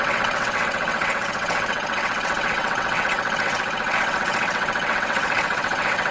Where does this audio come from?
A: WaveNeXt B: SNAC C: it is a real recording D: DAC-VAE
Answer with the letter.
A